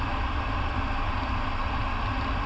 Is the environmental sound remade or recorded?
recorded